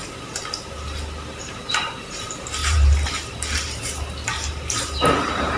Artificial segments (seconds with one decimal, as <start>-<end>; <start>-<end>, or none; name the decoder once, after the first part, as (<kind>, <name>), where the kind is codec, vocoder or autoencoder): 0.0-5.6 (vocoder, BigVGAN v2)